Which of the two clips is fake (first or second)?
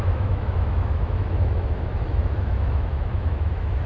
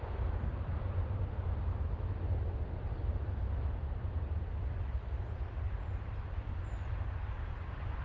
first